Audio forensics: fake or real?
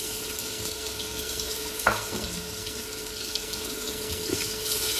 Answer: fake